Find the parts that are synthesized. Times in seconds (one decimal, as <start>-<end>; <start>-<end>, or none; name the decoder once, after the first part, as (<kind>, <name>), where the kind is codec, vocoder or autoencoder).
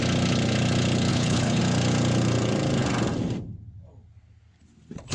1.1-1.6 (codec, HILCodec)